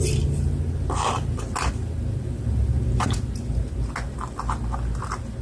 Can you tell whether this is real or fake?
real